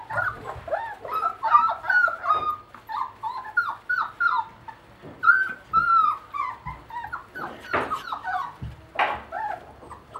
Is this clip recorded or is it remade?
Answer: recorded